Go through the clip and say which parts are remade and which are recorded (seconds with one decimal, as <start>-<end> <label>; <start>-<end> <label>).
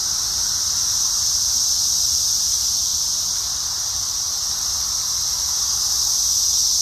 0.0-6.8 recorded